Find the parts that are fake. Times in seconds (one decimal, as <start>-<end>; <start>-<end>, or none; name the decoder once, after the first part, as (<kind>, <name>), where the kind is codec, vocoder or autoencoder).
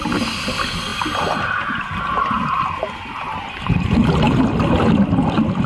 none